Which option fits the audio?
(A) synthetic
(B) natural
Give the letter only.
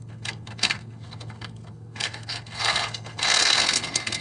A